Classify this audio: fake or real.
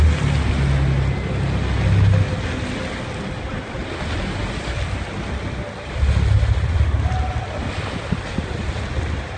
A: real